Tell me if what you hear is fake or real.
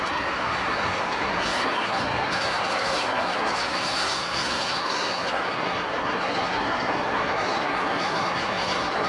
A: fake